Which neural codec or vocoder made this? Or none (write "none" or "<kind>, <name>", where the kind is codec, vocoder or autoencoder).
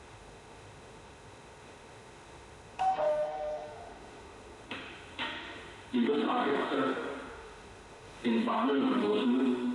autoencoder, DAC-VAE